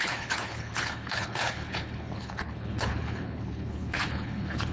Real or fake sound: fake